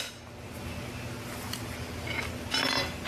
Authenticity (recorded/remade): recorded